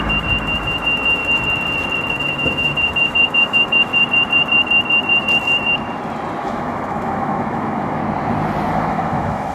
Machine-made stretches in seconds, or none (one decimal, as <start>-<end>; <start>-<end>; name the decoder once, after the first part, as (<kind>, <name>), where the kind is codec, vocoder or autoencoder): 0.0-1.2 (autoencoder, DAC-VAE); 2.1-3.9; 6.4-8.0; 8.7-9.5